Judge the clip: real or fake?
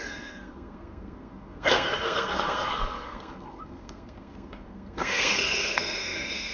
fake